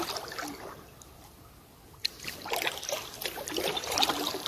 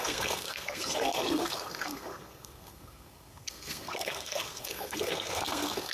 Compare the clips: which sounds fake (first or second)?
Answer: second